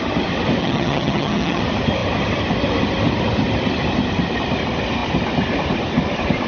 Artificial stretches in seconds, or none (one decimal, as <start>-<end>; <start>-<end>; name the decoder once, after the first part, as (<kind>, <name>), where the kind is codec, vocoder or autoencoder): 0.6-1.6 (vocoder, HiFi-GAN)